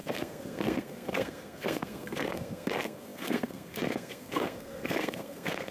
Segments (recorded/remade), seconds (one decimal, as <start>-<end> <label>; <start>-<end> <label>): 0.0-5.7 remade